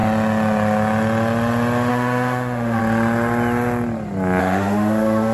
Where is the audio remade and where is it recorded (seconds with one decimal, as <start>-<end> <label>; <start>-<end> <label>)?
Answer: 0.0-1.9 recorded; 1.9-2.8 remade; 2.8-4.4 recorded; 4.4-5.3 remade